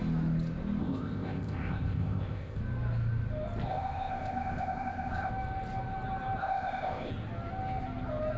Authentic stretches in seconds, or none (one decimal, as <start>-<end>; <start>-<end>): 0.0-0.8; 2.6-3.7; 5.3-6.4; 7.1-8.4